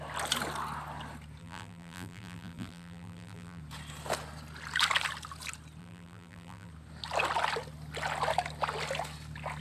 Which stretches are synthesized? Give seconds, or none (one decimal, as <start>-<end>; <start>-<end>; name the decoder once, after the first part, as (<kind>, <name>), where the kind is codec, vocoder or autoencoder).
1.4-3.6 (vocoder, BigVGAN v2); 5.8-6.7